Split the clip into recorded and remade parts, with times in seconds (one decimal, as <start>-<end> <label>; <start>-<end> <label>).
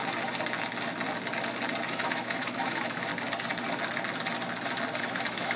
0.0-1.9 recorded; 1.9-3.1 remade; 3.1-5.0 recorded; 5.0-5.6 remade